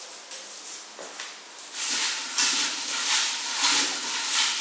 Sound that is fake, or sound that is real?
real